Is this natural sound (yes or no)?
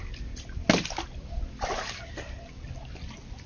yes